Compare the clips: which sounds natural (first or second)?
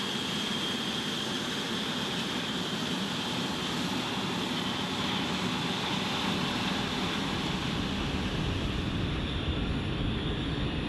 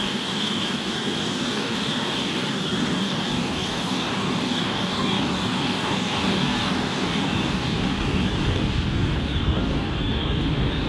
first